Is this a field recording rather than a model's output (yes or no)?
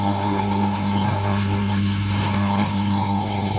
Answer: no